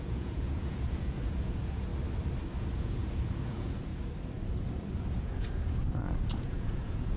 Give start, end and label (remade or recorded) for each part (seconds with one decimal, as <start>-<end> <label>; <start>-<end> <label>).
0.0-1.9 remade; 1.9-2.6 recorded; 2.6-3.9 remade; 3.9-4.9 recorded; 4.9-7.2 remade